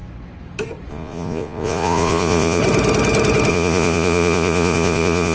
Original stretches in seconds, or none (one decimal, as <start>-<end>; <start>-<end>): 0.0-0.9; 2.6-3.5